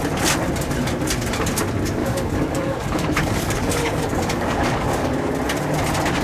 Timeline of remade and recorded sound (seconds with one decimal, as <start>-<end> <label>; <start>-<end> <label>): 0.0-2.0 recorded; 2.0-5.3 remade; 5.3-6.2 recorded